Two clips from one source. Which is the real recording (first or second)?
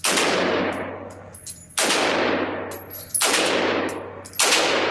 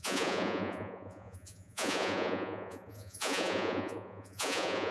first